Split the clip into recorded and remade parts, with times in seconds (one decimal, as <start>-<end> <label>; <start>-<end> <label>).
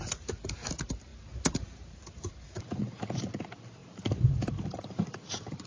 0.0-1.1 recorded; 1.1-3.3 remade; 3.3-3.8 recorded; 3.8-5.7 remade